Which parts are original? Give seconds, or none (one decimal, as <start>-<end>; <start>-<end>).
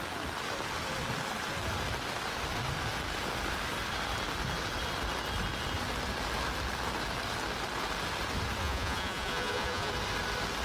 0.0-8.6; 9.9-10.6